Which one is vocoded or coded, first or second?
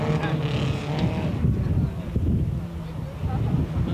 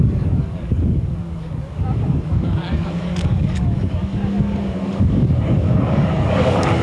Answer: second